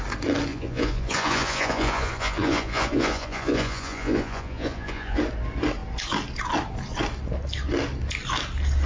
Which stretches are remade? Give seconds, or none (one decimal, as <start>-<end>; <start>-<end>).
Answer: 0.5-5.2

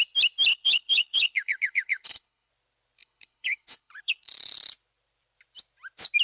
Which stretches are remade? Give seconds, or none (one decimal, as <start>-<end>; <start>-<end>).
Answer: 0.5-2.5; 3.0-4.3